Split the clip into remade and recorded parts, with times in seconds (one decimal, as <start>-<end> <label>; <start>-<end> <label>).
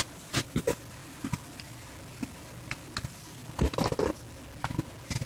0.0-5.3 recorded